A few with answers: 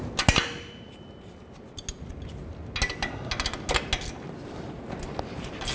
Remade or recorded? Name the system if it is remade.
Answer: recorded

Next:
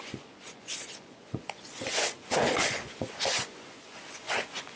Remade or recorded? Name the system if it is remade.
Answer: remade, vocoder, Vocos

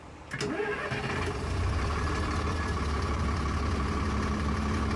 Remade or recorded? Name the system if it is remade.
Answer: recorded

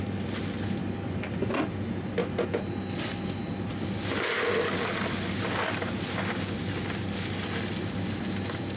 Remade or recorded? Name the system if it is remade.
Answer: recorded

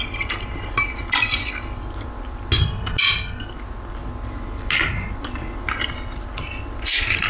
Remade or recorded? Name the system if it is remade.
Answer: recorded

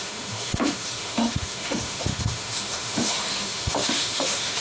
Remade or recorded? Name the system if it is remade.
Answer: remade, autoencoder, DAC-VAE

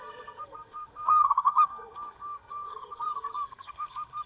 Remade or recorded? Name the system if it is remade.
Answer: remade, codec, SNAC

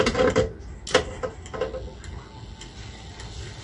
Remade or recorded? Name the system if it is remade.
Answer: recorded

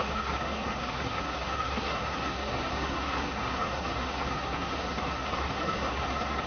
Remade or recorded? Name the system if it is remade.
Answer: remade, codec, SNAC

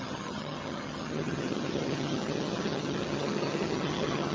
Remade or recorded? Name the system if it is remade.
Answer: remade, vocoder, HiFi-GAN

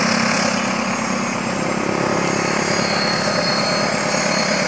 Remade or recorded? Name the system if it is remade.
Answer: recorded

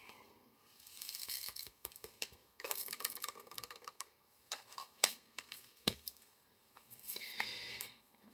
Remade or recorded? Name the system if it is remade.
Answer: remade, codec, SNAC